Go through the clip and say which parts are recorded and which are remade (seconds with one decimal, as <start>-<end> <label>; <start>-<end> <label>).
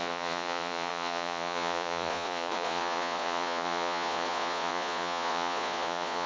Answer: 0.0-6.3 remade